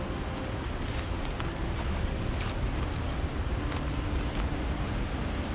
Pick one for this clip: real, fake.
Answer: real